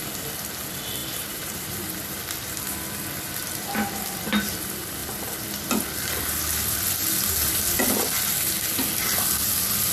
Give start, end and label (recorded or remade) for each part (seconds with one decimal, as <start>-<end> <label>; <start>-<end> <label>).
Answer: 0.0-1.0 recorded; 1.0-1.7 remade; 1.7-9.9 recorded